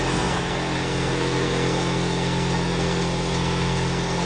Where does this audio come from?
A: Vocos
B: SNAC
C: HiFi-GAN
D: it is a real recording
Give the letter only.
B